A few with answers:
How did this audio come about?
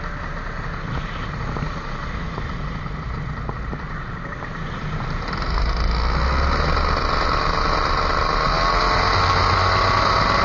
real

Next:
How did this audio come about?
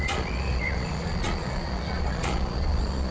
fake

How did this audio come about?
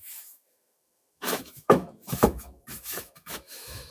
fake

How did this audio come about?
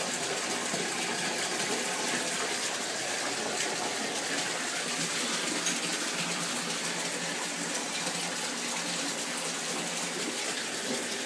real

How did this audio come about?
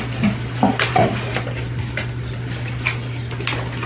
fake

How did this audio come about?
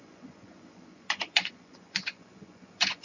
fake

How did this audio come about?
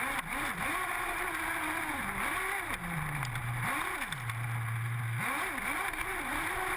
real